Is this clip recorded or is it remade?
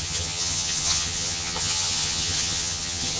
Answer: remade